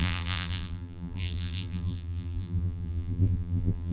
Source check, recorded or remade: remade